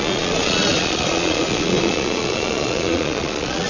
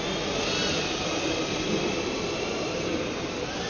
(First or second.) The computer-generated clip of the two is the first